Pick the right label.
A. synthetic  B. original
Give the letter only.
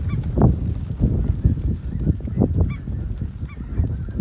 B